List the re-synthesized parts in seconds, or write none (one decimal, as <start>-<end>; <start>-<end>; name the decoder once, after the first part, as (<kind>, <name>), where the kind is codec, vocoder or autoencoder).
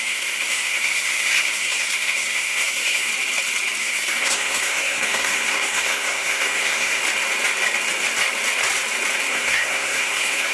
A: 0.0-3.1 (codec, SNAC); 3.8-7.0; 9.3-10.5